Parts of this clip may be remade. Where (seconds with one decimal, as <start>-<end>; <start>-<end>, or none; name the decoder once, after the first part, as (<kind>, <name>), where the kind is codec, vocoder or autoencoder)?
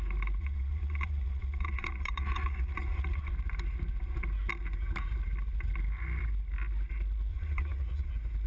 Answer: 0.4-3.3 (vocoder, Vocos); 7.3-8.1